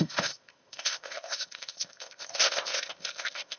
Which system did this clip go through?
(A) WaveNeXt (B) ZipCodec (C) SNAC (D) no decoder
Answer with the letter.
B